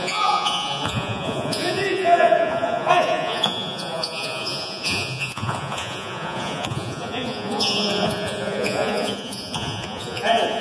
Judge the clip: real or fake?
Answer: fake